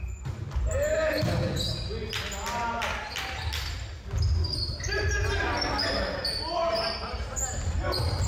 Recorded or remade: recorded